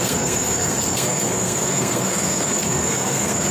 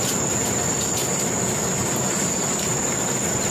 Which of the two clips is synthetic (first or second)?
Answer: first